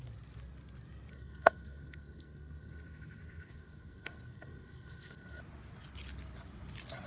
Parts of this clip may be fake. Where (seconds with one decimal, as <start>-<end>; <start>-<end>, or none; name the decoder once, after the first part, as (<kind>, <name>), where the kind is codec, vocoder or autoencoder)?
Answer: 1.1-5.4 (codec, SNAC)